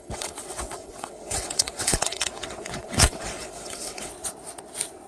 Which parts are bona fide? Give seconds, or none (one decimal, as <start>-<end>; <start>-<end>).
4.1-5.1